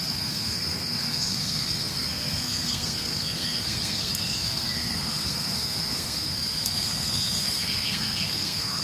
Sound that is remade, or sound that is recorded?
remade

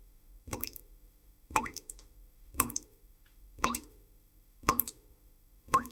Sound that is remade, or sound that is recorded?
remade